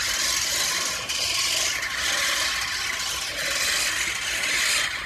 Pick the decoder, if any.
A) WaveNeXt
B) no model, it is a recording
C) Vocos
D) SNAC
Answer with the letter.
B